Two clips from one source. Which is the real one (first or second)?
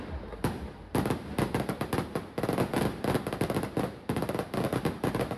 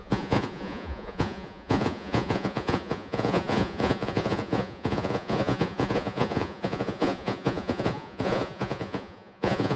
first